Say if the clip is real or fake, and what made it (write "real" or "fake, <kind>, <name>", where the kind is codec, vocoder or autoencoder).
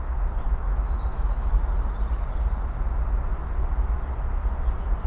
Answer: real